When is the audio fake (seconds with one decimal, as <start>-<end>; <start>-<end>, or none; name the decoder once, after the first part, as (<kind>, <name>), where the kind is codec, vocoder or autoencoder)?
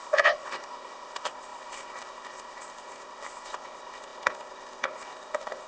0.0-5.7 (codec, ZipCodec)